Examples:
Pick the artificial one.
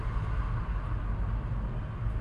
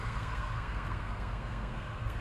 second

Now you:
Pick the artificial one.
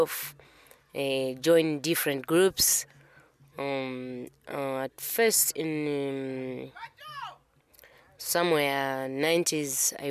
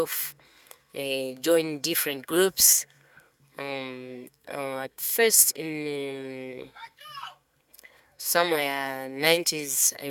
second